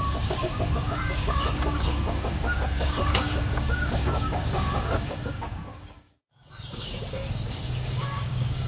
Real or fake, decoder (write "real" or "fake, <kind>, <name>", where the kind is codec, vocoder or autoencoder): fake, codec, DAC